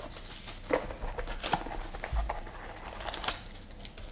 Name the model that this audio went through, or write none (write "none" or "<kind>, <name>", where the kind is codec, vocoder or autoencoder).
none